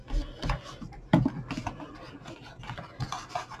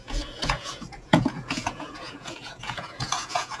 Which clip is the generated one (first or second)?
second